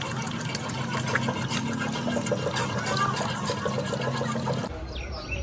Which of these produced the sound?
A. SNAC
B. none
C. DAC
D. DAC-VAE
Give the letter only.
B